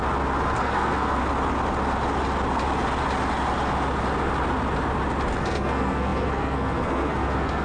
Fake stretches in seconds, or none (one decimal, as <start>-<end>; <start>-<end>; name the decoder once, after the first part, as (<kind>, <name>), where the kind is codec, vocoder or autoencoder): 0.6-1.2 (codec, SNAC); 5.4-7.6